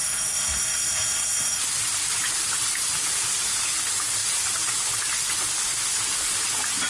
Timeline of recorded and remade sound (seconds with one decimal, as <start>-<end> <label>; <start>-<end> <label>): 0.0-1.6 remade; 1.6-6.9 recorded